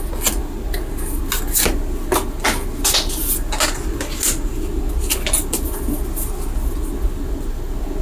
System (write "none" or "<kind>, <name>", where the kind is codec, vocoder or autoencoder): none